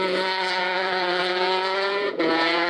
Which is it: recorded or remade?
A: remade